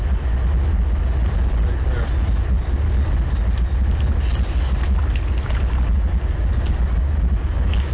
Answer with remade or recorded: recorded